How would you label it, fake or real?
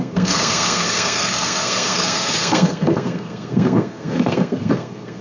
fake